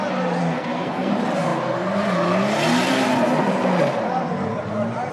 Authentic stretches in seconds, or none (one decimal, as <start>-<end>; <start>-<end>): 0.0-0.4; 1.1-5.1